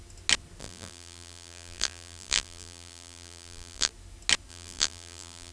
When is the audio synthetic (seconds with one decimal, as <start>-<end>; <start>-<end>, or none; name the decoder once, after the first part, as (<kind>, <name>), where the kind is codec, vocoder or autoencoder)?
0.6-3.9 (vocoder, BigVGAN v2); 4.5-5.5